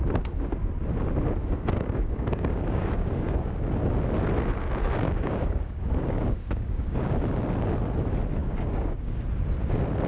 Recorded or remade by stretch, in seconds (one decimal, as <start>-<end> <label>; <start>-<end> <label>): 0.0-1.4 recorded; 1.4-3.6 remade; 3.6-4.6 recorded; 4.6-7.1 remade; 7.1-8.4 recorded; 8.4-9.2 remade; 9.2-10.1 recorded